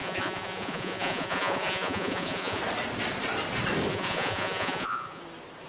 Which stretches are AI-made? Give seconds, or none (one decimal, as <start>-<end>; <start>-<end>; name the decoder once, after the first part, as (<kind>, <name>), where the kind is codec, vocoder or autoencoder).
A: 0.0-2.6 (vocoder, Vocos); 3.9-5.2